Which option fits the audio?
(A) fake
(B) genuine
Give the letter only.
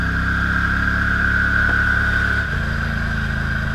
B